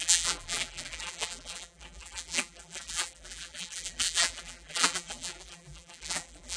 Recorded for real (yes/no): no